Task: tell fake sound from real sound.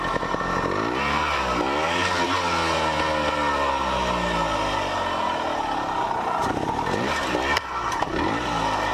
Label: real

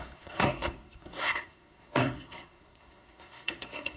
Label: fake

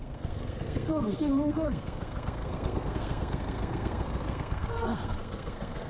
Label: fake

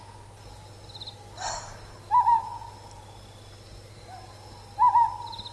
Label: real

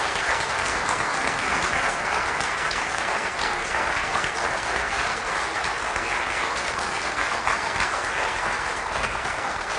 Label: fake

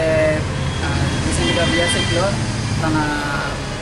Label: real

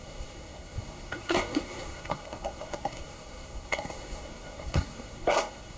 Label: fake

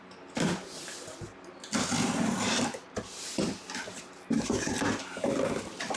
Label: real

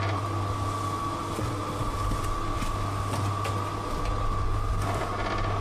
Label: real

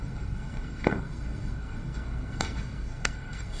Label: fake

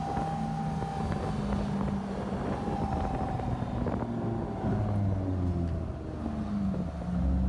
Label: real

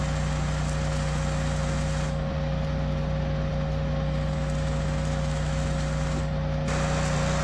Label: real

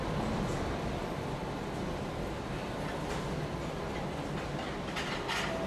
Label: real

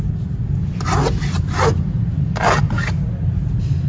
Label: real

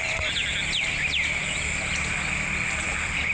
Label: real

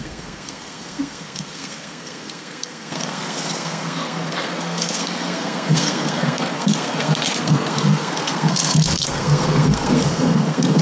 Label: fake